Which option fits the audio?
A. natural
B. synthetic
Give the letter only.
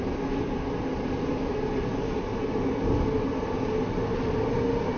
A